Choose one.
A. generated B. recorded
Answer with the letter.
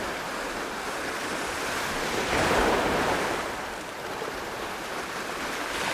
B